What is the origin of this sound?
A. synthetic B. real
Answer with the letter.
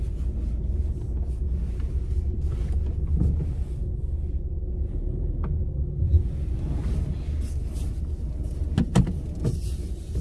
B